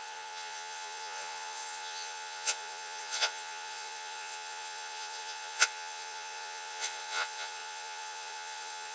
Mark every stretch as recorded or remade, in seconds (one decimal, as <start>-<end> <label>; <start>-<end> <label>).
0.0-8.9 remade